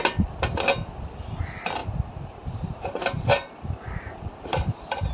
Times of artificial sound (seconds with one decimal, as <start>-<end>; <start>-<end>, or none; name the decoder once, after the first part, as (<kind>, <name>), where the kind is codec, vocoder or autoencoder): 1.8-5.1 (vocoder, BigVGAN v2)